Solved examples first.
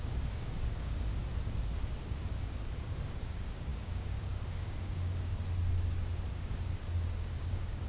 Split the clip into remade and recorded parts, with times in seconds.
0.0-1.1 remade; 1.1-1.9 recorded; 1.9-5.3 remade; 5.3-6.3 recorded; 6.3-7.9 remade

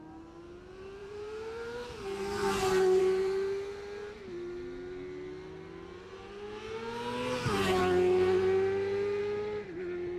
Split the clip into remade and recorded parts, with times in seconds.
0.0-1.0 recorded; 1.0-3.0 remade; 3.0-10.2 recorded

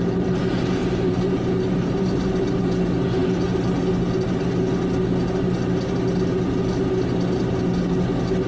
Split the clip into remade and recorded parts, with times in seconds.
0.0-0.8 recorded; 0.8-2.6 remade; 2.6-8.5 recorded